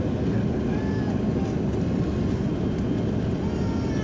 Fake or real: real